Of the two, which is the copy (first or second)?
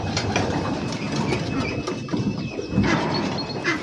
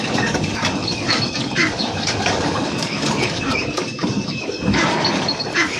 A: second